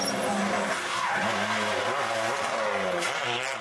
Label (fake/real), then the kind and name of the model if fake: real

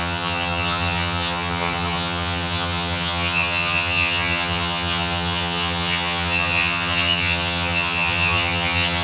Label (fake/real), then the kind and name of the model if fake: fake, vocoder, HiFi-GAN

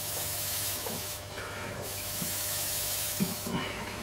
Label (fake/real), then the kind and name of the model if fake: fake, autoencoder, DAC-VAE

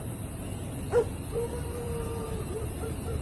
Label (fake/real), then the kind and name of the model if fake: fake, vocoder, BigVGAN v2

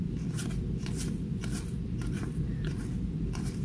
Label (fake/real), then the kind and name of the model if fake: fake, vocoder, BigVGAN v2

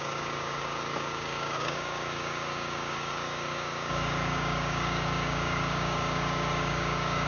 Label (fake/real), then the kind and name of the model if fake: fake, codec, DAC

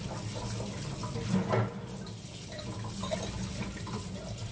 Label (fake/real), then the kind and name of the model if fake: real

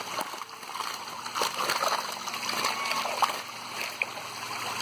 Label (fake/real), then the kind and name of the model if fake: real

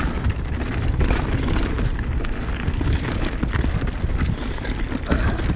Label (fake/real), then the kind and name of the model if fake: real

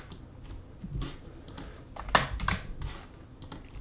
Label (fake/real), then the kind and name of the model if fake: real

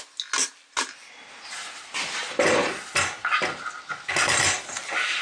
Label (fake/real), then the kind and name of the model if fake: real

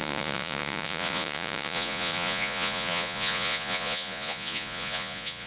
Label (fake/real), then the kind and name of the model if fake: fake, vocoder, Vocos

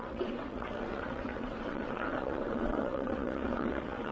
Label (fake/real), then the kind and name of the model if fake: fake, vocoder, WaveNeXt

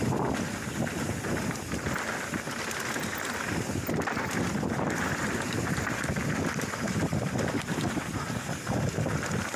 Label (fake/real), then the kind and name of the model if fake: real